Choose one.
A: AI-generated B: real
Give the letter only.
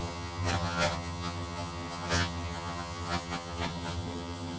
A